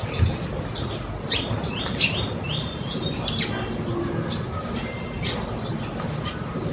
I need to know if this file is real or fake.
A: real